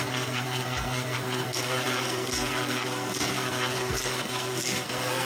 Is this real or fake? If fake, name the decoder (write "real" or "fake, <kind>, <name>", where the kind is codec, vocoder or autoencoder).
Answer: fake, codec, SNAC